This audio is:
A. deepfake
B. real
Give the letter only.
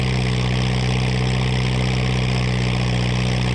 B